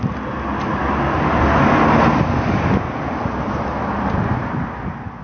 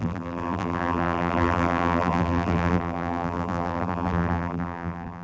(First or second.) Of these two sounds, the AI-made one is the second